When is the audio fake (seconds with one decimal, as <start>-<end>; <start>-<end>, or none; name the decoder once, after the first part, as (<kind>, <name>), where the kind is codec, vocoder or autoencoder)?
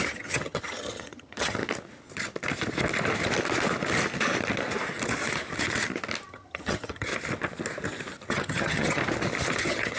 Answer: 0.0-1.6 (vocoder, HiFi-GAN); 6.3-7.1; 8.3-9.0; 9.6-10.0